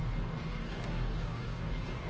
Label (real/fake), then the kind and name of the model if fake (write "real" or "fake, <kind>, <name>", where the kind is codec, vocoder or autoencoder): fake, codec, DAC